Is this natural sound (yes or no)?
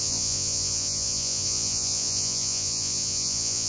no